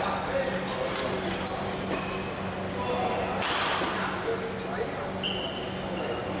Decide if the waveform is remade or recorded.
recorded